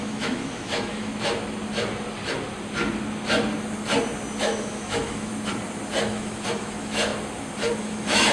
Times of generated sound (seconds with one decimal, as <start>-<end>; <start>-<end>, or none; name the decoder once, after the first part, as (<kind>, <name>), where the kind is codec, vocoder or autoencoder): 0.0-1.1 (autoencoder, DAC-VAE); 4.4-5.3; 6.0-7.1; 7.8-8.3